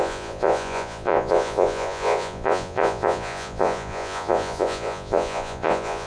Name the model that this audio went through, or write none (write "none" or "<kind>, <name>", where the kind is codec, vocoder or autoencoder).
vocoder, Vocos